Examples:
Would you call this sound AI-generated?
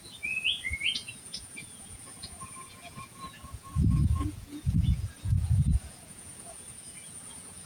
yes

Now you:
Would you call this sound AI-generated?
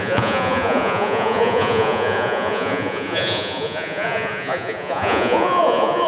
yes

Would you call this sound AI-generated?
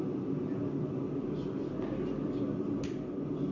no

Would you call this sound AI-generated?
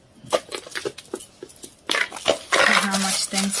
no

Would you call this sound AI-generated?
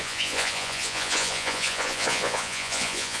yes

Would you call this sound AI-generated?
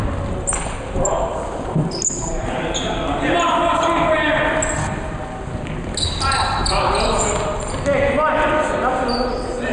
no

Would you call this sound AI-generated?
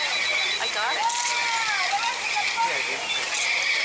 no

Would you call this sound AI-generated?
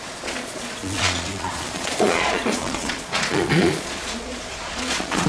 yes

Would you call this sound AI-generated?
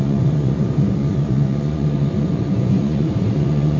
yes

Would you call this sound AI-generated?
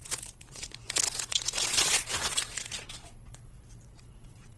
yes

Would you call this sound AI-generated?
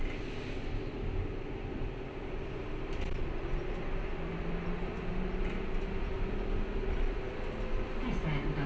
no